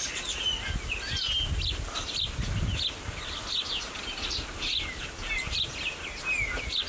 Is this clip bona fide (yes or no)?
yes